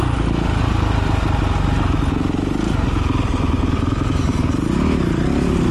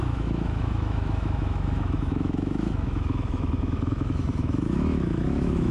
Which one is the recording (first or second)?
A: first